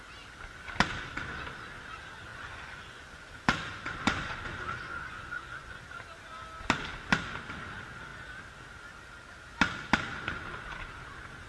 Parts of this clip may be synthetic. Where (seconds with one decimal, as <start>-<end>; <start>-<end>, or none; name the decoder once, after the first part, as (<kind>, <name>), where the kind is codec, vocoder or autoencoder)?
2.3-5.8 (vocoder, Vocos)